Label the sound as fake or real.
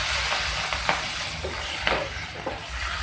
real